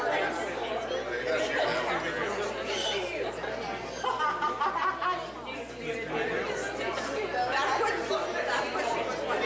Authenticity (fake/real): real